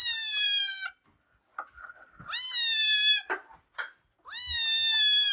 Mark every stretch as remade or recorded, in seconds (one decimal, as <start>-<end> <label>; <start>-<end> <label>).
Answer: 0.0-5.3 recorded